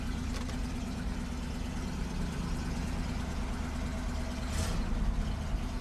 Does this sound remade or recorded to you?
recorded